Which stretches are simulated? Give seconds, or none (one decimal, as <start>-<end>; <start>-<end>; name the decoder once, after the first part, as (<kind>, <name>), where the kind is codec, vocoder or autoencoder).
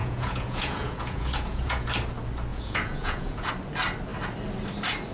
0.0-1.9 (vocoder, Vocos); 2.5-3.5